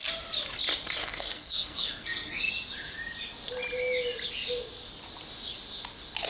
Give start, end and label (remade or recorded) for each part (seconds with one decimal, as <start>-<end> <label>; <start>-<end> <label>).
0.0-1.0 recorded; 1.0-2.5 remade; 2.5-6.3 recorded